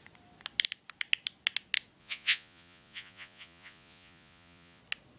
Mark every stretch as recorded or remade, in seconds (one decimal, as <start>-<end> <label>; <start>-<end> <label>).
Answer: 0.0-2.0 recorded; 2.0-4.8 remade; 4.8-5.2 recorded